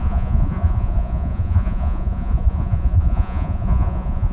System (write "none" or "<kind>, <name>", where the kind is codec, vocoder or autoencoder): vocoder, Vocos